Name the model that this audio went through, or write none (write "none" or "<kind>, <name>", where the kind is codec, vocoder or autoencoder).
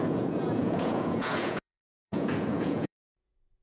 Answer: vocoder, Vocos